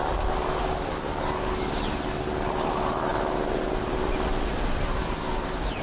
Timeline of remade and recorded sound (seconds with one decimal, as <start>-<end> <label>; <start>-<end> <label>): 0.0-5.8 recorded